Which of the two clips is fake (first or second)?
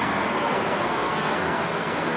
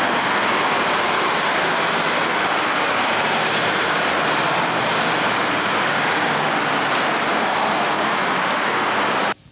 first